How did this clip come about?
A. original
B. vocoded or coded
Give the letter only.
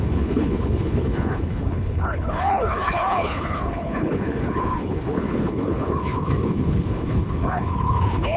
B